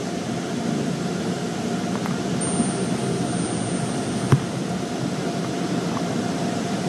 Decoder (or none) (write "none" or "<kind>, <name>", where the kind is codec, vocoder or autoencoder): none